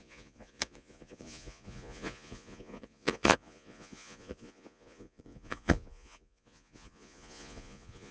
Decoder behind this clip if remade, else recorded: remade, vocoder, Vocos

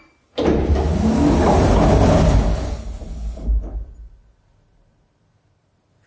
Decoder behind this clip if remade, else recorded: recorded